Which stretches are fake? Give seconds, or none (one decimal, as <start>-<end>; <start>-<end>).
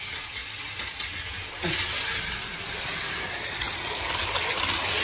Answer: none